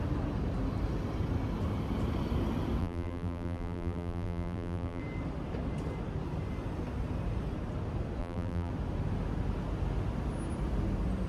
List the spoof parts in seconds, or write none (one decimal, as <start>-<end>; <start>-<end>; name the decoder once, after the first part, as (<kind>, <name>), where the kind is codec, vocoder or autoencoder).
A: 2.8-5.0 (vocoder, BigVGAN v2); 8.2-8.7